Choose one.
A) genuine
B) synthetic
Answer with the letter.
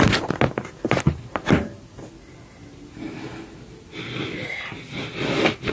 A